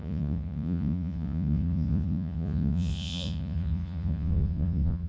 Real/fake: fake